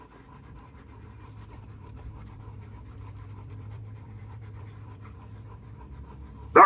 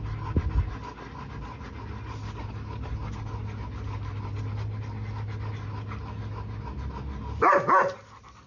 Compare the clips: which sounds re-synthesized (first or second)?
first